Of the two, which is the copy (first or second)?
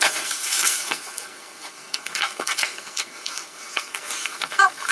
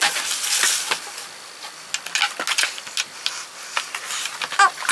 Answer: first